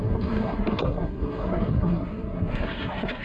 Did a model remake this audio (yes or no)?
yes